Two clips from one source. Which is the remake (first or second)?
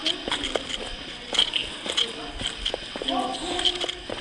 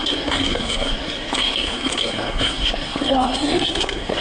second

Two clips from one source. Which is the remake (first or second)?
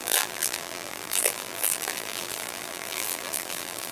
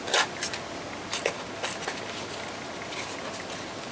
first